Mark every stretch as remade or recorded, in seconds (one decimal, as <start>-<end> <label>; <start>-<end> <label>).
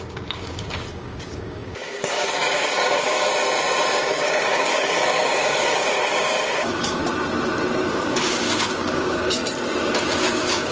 0.0-3.3 remade; 3.3-3.9 recorded; 3.9-7.0 remade; 7.0-7.9 recorded; 7.9-9.4 remade; 9.4-10.2 recorded; 10.2-10.7 remade